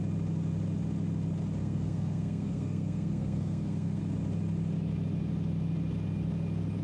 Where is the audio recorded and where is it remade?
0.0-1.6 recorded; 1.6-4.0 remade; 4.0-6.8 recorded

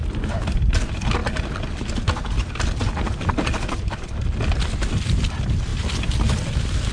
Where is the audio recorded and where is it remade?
0.0-6.9 recorded

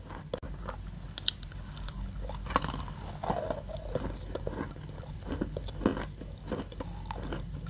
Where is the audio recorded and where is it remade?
0.0-7.7 recorded

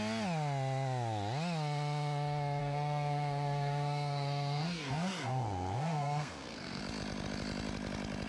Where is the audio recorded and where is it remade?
0.0-2.6 recorded; 2.6-6.8 remade; 6.8-8.3 recorded

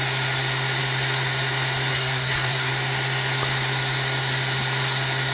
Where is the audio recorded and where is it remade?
0.0-1.9 recorded; 1.9-2.7 remade; 2.7-5.3 recorded